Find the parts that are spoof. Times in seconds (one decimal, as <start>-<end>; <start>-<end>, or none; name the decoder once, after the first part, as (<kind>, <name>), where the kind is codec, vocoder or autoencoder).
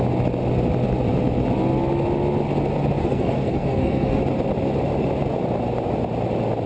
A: 3.0-4.2 (codec, SNAC)